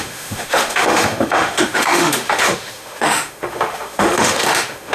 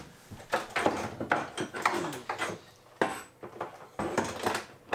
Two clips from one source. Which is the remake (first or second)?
first